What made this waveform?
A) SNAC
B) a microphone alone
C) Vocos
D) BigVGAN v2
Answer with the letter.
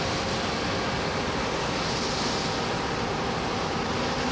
B